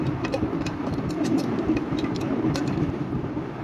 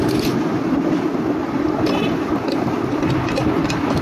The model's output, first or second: first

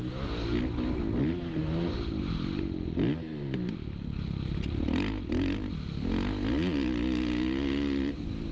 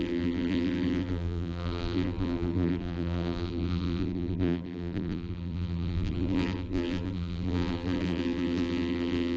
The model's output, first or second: second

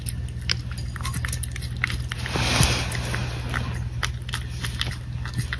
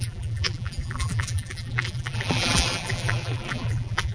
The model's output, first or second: second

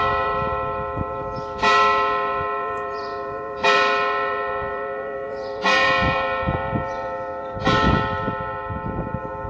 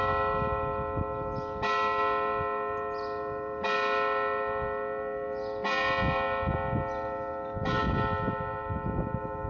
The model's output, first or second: first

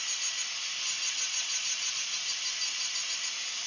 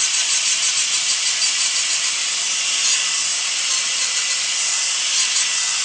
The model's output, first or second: second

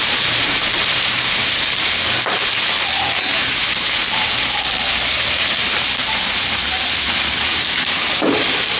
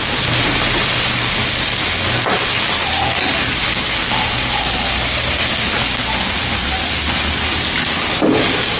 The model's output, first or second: first